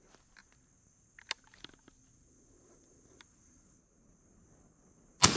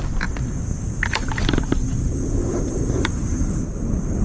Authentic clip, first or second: first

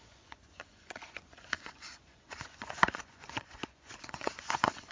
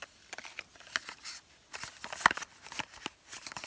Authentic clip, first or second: second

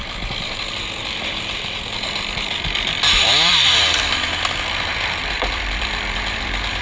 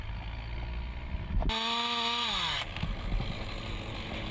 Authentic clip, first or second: second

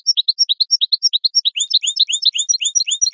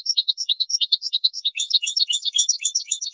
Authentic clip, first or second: first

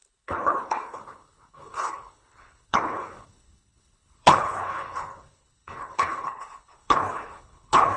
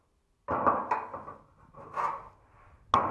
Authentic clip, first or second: second